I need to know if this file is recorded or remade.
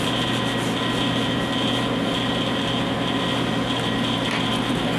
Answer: recorded